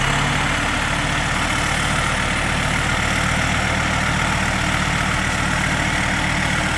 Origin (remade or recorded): recorded